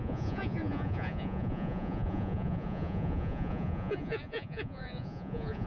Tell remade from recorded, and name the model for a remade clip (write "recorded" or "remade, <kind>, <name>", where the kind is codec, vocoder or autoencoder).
remade, vocoder, Vocos